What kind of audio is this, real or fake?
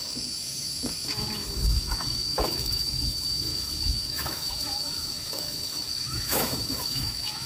fake